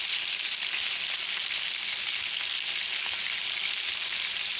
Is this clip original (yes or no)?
yes